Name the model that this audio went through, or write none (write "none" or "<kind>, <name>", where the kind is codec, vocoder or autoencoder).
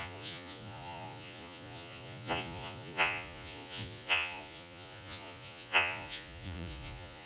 vocoder, Vocos